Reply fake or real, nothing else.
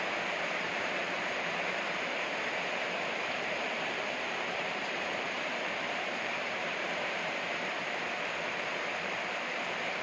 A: fake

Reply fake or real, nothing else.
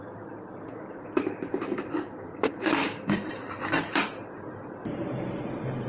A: fake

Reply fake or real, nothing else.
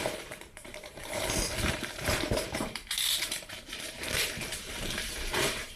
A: fake